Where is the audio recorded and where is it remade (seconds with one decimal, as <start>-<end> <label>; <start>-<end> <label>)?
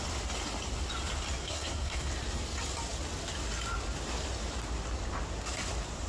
0.0-1.4 recorded; 1.4-2.1 remade; 2.1-6.1 recorded